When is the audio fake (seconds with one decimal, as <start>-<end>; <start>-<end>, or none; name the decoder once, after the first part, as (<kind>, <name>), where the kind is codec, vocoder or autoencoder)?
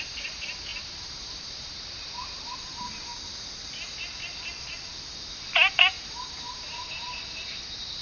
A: 0.0-3.1 (vocoder, BigVGAN v2); 5.7-7.2